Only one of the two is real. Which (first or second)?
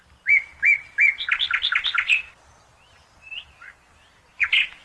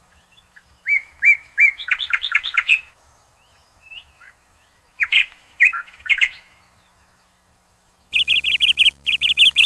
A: first